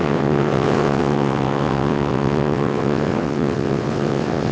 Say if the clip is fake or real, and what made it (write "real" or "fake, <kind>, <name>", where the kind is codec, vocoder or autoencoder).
fake, vocoder, WaveNeXt